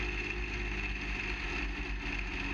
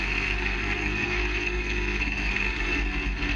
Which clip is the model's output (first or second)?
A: second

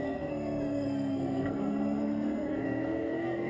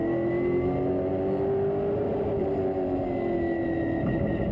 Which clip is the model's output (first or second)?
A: first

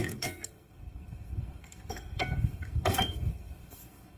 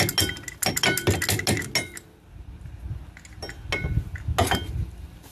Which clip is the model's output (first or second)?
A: first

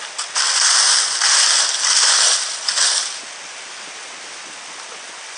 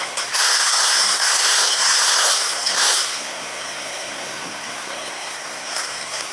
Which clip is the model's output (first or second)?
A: second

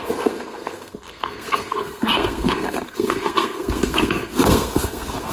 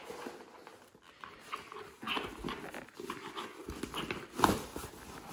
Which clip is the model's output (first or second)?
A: first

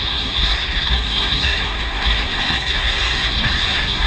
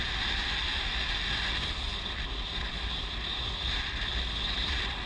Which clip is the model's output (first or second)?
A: first